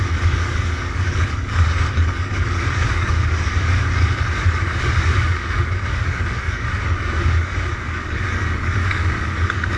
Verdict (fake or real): fake